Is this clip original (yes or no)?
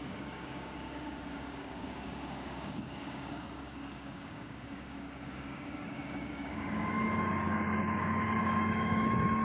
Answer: no